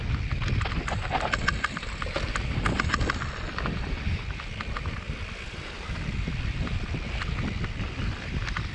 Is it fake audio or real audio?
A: real